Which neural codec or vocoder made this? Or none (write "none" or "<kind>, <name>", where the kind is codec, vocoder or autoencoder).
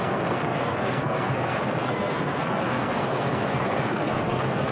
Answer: codec, SNAC